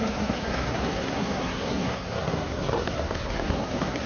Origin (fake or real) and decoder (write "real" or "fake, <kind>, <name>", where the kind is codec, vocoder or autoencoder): fake, codec, SNAC